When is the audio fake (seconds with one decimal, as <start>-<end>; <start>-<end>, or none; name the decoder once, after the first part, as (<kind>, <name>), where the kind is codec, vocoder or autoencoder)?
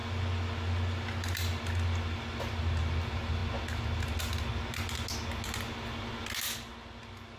none